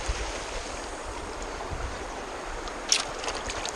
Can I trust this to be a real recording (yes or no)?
yes